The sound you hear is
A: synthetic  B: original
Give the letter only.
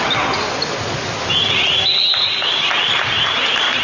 B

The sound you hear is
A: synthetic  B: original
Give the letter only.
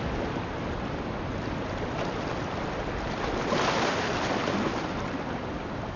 B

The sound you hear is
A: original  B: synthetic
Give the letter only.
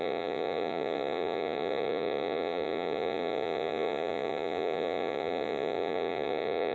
B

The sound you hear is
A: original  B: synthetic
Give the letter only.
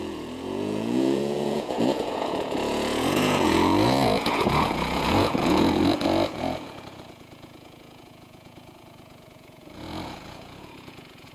B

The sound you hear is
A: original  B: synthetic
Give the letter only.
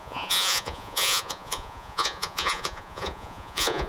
B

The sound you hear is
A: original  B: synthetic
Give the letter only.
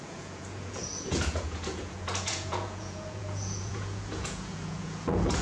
B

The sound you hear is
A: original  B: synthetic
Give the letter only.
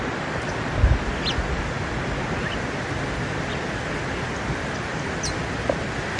A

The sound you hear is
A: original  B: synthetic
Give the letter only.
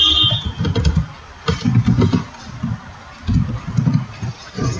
A